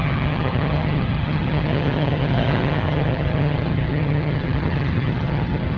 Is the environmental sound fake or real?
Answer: fake